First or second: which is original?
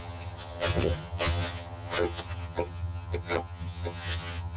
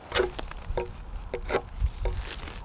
second